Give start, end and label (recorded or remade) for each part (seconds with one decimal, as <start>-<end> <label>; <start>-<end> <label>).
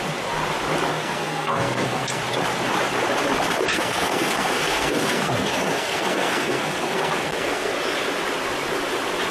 0.0-0.9 recorded; 0.9-2.2 remade; 2.2-3.7 recorded; 3.7-7.7 remade; 7.7-9.3 recorded